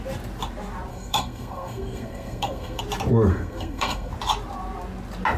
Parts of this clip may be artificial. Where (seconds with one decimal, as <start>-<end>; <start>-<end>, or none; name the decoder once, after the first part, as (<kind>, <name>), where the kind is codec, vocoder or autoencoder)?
0.9-2.8 (codec, SNAC); 3.3-4.1